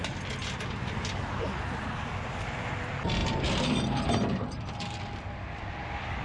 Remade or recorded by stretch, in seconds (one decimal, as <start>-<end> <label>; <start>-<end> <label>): 0.0-6.2 recorded